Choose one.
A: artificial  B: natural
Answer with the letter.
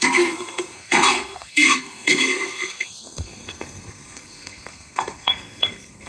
A